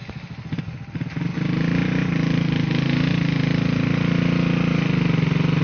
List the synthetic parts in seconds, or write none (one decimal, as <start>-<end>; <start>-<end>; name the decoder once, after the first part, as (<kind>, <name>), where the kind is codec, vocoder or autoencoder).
none